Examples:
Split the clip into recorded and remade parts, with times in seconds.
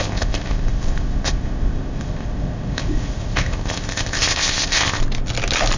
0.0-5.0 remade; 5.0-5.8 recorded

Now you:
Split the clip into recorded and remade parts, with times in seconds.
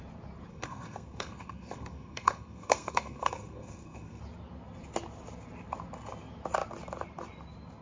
0.0-0.5 recorded; 0.5-4.2 remade; 4.2-7.8 recorded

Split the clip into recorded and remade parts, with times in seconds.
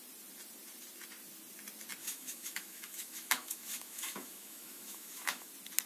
0.0-2.0 recorded; 2.0-5.5 remade; 5.5-5.9 recorded